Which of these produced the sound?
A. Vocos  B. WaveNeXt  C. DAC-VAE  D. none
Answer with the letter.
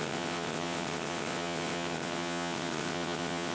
B